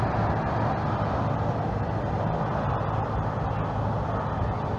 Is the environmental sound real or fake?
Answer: real